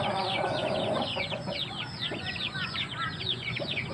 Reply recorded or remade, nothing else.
remade